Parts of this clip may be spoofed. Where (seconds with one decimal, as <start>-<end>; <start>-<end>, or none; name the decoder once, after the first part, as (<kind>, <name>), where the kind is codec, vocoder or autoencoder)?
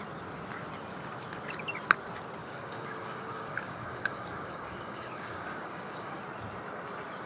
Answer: 2.4-6.2 (codec, DAC)